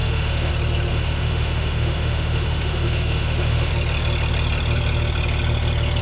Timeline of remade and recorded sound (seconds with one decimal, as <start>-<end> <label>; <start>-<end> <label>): 0.0-0.5 remade; 0.5-0.9 recorded; 0.9-3.7 remade; 3.7-6.0 recorded